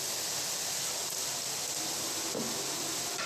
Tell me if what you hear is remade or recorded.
recorded